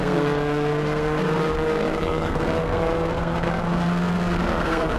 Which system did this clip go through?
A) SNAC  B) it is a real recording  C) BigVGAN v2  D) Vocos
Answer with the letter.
A